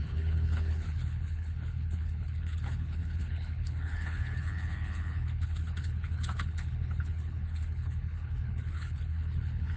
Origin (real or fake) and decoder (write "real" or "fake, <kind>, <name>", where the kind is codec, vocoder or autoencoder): fake, codec, HILCodec